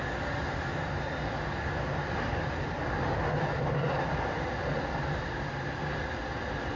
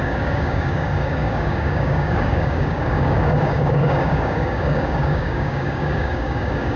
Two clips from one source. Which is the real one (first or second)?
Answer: first